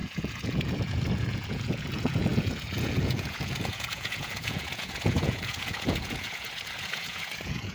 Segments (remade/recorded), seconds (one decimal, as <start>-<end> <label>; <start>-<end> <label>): 0.0-7.7 remade